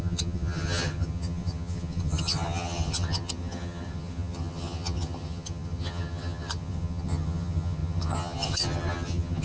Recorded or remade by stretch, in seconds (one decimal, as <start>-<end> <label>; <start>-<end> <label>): 0.0-9.4 remade